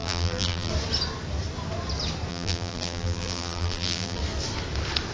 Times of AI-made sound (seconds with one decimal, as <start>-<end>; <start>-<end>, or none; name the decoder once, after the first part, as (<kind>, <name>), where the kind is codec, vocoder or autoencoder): 0.0-0.7 (vocoder, BigVGAN v2); 2.3-4.2